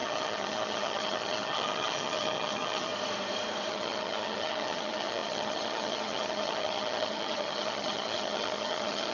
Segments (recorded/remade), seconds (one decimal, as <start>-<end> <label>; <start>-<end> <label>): 0.0-2.9 remade; 2.9-3.7 recorded; 3.7-9.1 remade